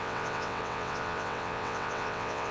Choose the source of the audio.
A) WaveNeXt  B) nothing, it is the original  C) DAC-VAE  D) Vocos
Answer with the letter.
A